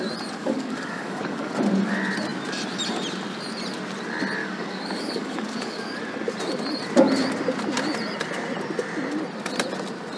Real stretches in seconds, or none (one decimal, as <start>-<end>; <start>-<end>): 0.0-0.4; 1.5-4.4; 6.0-10.2